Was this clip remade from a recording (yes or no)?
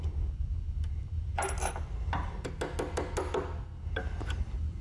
no